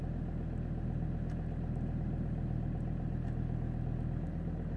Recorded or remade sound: recorded